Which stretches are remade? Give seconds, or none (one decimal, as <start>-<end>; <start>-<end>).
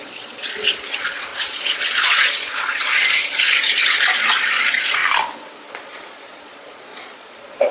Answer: 0.0-5.0; 5.7-7.7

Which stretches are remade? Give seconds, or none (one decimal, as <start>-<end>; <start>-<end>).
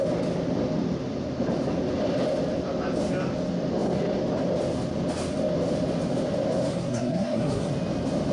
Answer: 6.7-7.7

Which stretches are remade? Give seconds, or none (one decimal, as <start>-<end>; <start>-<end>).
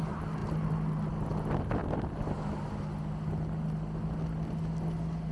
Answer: none